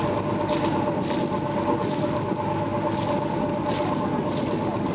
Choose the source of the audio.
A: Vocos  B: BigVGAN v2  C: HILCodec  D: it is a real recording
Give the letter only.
D